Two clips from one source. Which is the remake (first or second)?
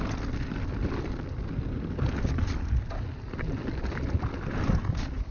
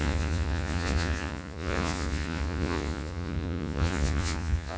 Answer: second